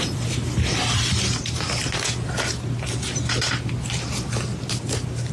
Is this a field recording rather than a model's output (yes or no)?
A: yes